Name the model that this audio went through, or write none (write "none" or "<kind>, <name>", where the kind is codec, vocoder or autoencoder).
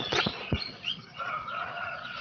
vocoder, Vocos